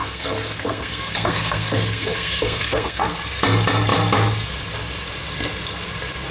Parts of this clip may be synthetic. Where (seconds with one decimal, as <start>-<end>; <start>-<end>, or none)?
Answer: 0.0-3.1